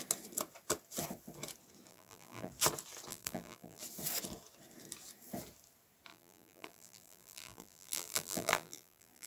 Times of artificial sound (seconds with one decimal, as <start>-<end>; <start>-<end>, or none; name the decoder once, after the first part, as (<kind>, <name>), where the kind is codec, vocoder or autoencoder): 1.9-2.5 (vocoder, BigVGAN v2); 3.1-3.8; 6.1-9.3